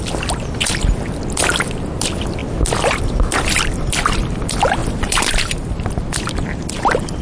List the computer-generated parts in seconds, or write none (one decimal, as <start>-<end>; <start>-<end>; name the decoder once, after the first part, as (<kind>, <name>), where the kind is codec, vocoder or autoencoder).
4.8-5.5 (vocoder, BigVGAN v2)